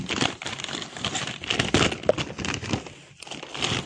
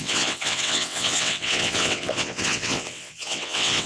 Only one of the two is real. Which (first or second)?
first